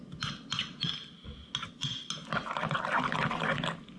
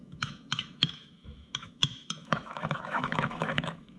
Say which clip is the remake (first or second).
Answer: second